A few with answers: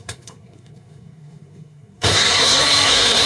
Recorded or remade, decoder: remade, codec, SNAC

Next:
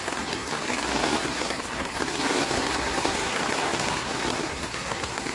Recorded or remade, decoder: remade, codec, SNAC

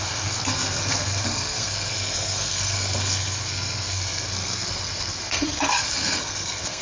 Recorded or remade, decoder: remade, codec, SNAC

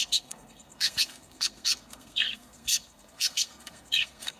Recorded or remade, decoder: remade, codec, SNAC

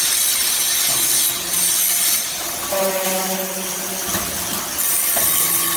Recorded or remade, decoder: recorded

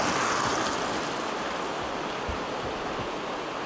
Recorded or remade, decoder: recorded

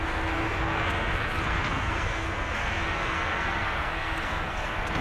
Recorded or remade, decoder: remade, codec, SNAC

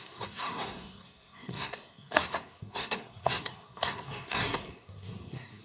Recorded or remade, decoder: remade, codec, SNAC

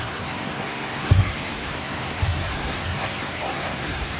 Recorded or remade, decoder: remade, codec, SNAC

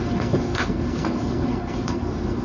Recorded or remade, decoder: remade, codec, SNAC